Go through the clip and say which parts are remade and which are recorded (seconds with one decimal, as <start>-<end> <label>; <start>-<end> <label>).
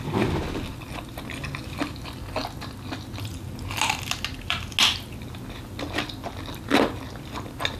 0.0-7.8 recorded